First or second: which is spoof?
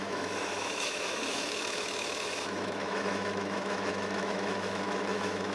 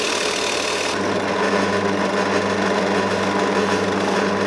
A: first